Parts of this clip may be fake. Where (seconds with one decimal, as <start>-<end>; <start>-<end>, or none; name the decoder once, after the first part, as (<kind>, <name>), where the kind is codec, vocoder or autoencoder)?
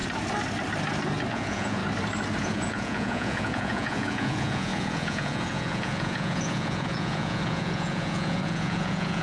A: 1.3-1.8 (vocoder, Vocos); 2.4-9.2